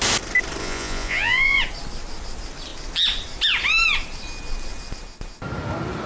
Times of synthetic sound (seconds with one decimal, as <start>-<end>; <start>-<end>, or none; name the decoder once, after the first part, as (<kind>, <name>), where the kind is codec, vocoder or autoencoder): 0.6-1.6 (vocoder, Vocos)